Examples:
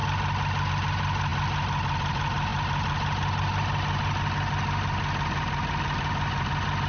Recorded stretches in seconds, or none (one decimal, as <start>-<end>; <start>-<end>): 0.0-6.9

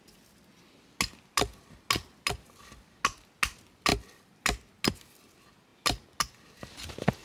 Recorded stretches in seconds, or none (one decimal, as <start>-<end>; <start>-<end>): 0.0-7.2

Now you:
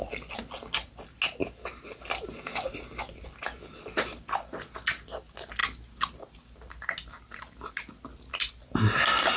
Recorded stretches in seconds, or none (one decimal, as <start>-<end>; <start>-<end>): 0.0-9.4

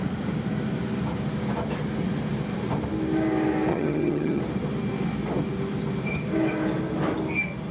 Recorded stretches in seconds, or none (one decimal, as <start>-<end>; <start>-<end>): 0.0-3.7; 4.4-7.7